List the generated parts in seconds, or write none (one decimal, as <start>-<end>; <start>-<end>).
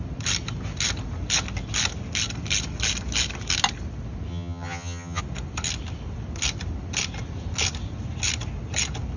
4.3-5.2